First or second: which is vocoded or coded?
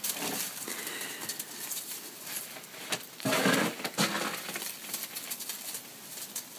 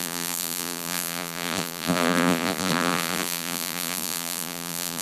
second